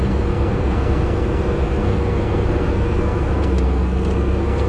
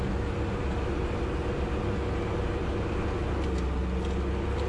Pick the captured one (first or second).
second